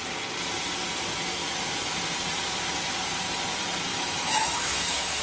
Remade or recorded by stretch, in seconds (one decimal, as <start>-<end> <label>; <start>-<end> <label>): 0.0-3.9 recorded; 3.9-5.2 remade